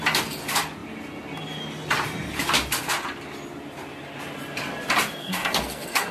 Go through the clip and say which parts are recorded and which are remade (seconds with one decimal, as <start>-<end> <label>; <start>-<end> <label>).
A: 0.0-5.2 recorded; 5.2-6.1 remade